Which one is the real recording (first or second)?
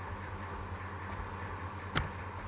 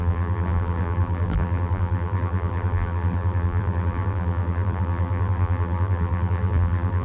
first